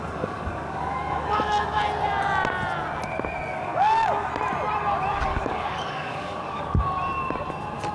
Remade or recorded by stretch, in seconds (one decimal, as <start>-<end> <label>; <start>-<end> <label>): 0.0-1.8 remade; 1.8-3.5 recorded; 3.5-4.3 remade; 4.3-5.3 recorded; 5.3-6.6 remade; 6.6-7.9 recorded